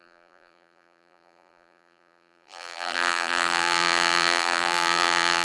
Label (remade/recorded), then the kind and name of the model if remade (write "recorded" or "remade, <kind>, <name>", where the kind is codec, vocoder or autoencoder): remade, vocoder, BigVGAN v2